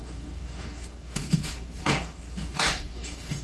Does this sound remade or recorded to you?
remade